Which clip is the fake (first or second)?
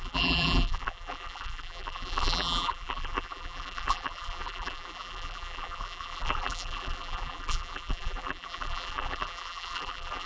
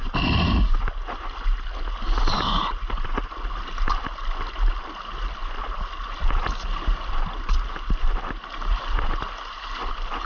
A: first